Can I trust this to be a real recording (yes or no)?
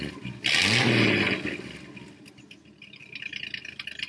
yes